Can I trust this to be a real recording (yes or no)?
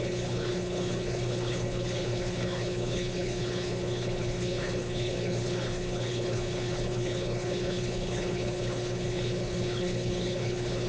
no